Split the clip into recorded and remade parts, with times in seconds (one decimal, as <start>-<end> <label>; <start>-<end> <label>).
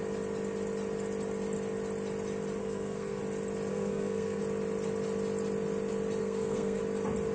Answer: 0.0-2.6 recorded; 2.6-3.2 remade; 3.2-3.7 recorded; 3.7-4.4 remade; 4.4-6.2 recorded; 6.2-6.8 remade; 6.8-7.3 recorded